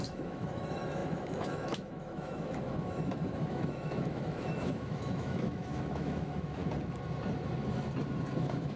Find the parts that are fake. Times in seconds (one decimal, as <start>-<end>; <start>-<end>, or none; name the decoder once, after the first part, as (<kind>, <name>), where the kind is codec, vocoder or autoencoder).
0.0-6.6 (autoencoder, DAC-VAE); 8.4-8.8